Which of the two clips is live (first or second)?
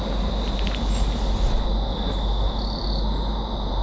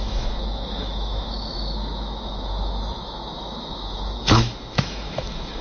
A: first